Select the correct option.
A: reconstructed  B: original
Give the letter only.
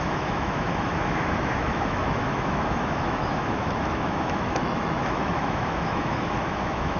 A